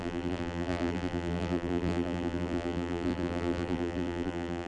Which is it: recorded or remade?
remade